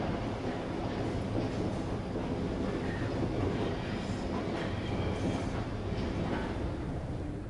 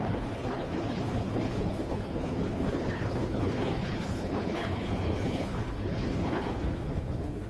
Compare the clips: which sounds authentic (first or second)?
first